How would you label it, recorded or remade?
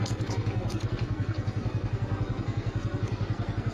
remade